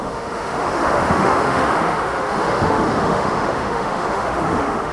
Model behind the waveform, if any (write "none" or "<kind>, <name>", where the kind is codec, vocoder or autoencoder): autoencoder, DAC-VAE